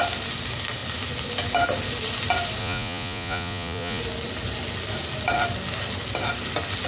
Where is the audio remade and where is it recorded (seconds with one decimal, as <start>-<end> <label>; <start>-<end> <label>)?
0.0-2.6 recorded; 2.6-4.0 remade; 4.0-6.9 recorded